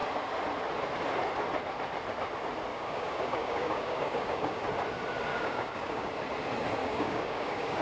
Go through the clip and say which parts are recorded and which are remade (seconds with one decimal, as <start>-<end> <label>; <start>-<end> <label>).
0.0-2.7 recorded; 2.7-4.6 remade; 4.6-5.3 recorded; 5.3-6.1 remade; 6.1-6.8 recorded; 6.8-7.8 remade